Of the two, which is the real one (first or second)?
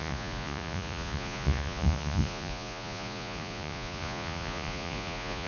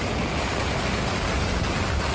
second